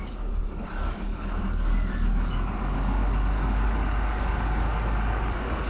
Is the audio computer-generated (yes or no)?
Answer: yes